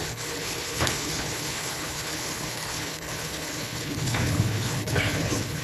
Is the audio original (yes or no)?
no